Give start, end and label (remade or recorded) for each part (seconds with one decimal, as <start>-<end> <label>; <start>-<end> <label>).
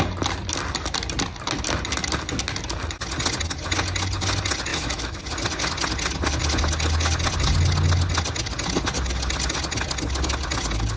0.0-4.7 recorded; 4.7-5.2 remade; 5.2-11.0 recorded